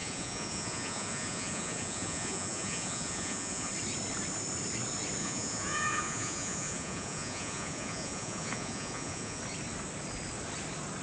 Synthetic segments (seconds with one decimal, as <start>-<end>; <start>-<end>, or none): 0.0-3.7; 5.2-9.4